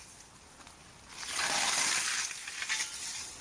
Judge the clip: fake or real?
real